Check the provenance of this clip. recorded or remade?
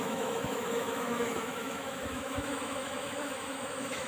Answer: remade